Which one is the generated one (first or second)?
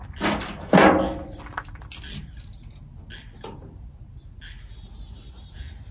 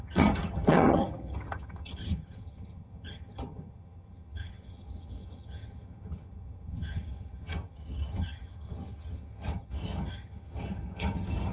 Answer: second